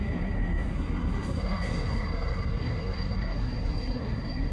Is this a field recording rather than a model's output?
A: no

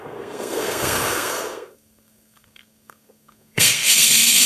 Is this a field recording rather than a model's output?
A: no